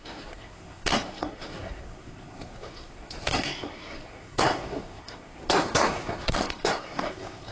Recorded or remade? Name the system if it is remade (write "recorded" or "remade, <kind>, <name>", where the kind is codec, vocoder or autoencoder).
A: remade, codec, SNAC